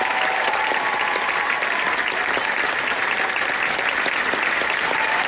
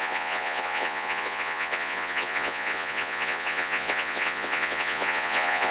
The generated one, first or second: second